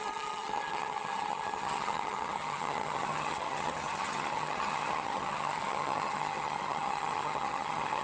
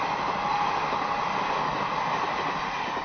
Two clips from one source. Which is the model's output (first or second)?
first